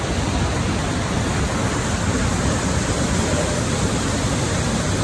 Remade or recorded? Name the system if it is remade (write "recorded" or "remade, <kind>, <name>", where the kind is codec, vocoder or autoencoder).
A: recorded